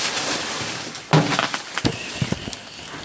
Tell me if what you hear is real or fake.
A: real